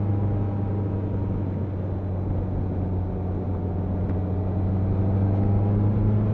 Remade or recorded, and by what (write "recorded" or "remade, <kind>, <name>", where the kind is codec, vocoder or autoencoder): recorded